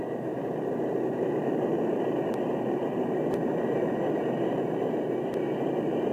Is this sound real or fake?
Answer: fake